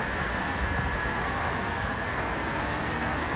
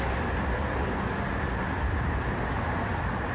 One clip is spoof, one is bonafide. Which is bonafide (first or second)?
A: second